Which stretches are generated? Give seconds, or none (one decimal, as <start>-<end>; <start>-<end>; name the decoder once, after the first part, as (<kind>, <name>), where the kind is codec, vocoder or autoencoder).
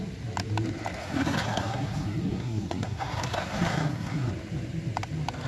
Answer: 1.0-4.3 (codec, SNAC)